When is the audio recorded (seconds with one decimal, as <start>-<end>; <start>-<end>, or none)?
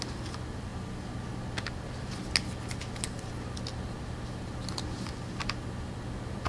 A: 0.0-6.5